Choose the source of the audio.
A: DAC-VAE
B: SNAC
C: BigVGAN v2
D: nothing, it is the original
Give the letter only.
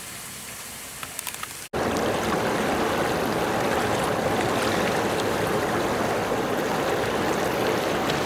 D